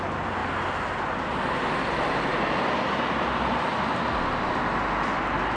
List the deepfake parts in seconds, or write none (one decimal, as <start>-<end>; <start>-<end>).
0.4-1.1; 3.7-4.2